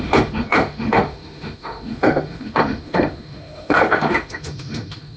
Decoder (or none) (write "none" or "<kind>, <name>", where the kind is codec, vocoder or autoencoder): autoencoder, DAC-VAE